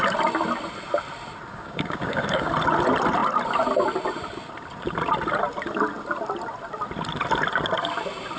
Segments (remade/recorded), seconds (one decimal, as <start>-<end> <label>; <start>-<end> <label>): 0.0-1.5 recorded; 1.5-2.5 remade; 2.5-8.4 recorded